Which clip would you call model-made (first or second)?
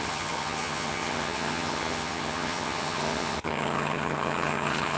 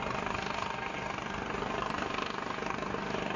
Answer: first